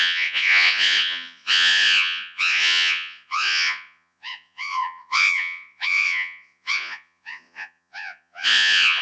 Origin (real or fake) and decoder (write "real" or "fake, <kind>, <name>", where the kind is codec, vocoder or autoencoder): fake, vocoder, Vocos